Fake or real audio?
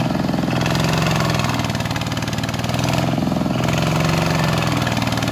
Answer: real